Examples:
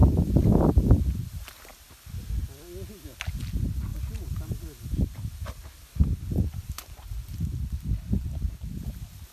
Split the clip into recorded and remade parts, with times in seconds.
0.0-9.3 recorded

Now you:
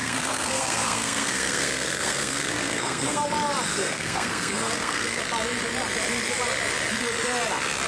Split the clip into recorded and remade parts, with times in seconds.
0.0-3.2 remade; 3.2-3.7 recorded; 3.7-5.2 remade; 5.2-7.9 recorded